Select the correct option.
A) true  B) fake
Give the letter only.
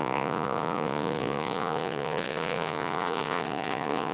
B